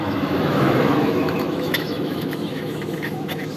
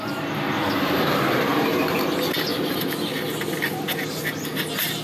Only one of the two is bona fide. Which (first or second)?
second